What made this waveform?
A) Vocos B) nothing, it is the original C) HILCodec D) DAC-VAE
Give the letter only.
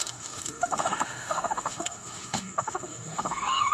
D